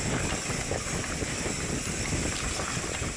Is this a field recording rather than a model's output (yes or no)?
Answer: yes